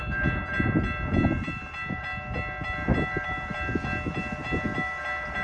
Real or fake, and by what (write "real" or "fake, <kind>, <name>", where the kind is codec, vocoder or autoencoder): real